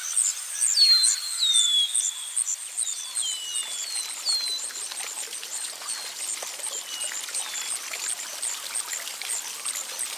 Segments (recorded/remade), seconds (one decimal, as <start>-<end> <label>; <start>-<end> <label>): 0.0-10.2 recorded